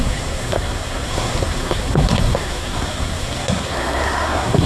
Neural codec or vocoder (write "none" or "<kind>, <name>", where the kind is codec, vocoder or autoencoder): codec, SNAC